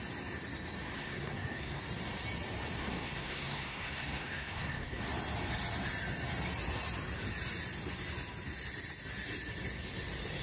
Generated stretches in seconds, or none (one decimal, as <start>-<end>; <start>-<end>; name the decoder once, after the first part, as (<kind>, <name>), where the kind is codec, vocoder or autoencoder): 1.0-1.8 (codec, SNAC); 2.8-5.0